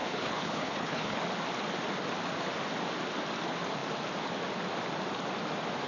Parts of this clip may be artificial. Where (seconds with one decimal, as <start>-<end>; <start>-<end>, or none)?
0.0-1.2